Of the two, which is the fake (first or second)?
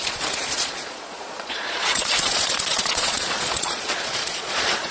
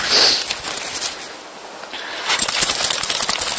first